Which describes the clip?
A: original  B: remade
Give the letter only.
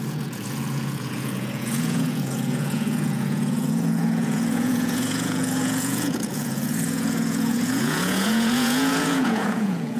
B